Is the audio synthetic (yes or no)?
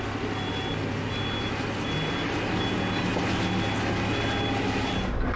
no